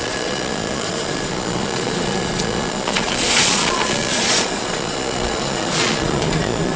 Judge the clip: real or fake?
fake